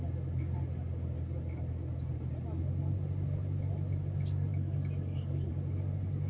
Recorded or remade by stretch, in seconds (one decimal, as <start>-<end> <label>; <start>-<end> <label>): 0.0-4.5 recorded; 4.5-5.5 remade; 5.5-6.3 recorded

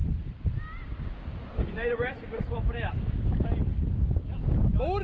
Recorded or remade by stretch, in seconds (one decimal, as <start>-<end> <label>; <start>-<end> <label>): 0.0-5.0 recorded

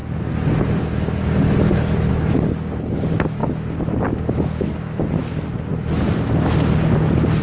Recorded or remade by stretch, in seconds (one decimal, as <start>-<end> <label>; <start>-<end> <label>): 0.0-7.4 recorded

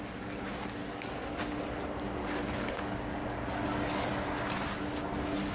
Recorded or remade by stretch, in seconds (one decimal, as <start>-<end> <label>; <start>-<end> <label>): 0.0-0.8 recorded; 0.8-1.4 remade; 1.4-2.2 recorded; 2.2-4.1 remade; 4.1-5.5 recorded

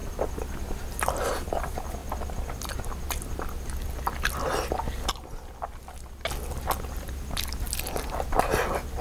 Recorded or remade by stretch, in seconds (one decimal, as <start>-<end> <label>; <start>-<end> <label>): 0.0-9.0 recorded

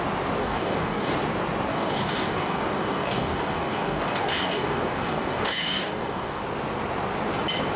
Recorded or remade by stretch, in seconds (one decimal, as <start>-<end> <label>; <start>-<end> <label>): 0.0-0.4 recorded; 0.4-1.1 remade; 1.1-1.7 recorded; 1.7-6.4 remade; 6.4-7.8 recorded

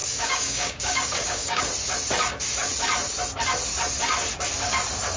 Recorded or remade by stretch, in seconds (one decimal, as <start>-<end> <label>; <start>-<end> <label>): 0.0-1.6 remade; 1.6-5.2 recorded